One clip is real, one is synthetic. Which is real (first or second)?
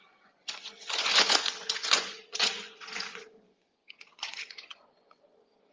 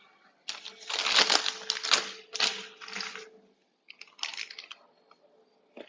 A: second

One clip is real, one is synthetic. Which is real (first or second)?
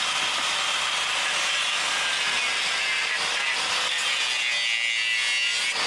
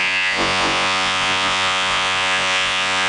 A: first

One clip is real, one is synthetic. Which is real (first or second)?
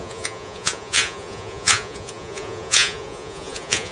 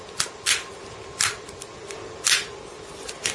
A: second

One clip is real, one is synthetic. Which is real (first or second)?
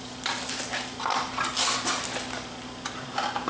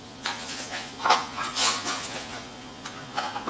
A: first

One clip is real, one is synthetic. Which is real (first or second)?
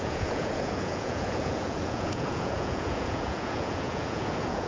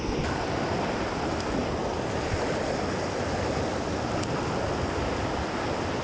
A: second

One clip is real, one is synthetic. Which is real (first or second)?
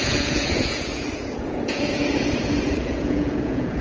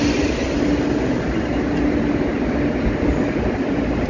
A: second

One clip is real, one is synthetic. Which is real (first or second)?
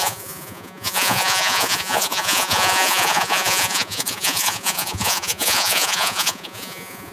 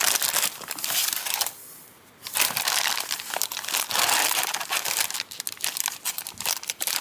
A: second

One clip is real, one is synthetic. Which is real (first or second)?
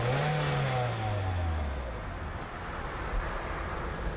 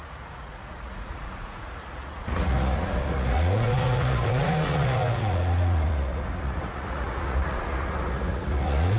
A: first